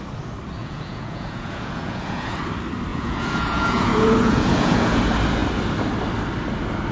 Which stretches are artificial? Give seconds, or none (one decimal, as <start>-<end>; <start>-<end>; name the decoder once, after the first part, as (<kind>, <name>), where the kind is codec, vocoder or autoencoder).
0.6-2.4 (vocoder, Vocos); 2.9-5.0